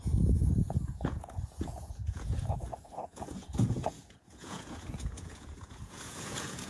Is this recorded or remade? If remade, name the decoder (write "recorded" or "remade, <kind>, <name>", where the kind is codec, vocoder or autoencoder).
remade, vocoder, Vocos